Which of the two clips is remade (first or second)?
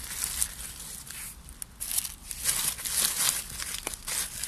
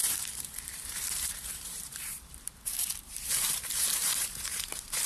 second